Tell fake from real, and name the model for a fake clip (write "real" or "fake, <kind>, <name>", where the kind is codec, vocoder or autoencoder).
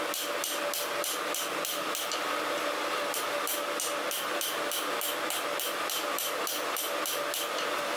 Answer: real